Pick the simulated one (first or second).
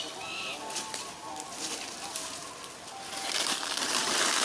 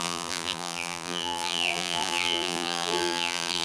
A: second